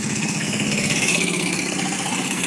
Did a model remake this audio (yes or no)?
yes